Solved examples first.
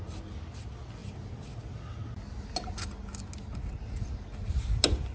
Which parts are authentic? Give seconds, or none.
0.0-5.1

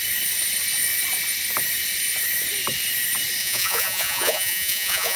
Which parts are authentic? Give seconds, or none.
0.0-3.4

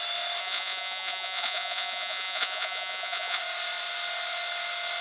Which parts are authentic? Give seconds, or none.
0.0-0.4; 3.4-5.0